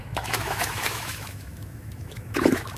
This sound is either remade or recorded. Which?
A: remade